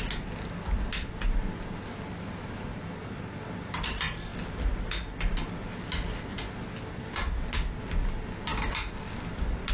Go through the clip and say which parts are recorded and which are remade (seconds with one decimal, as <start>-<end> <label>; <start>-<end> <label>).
0.0-9.7 recorded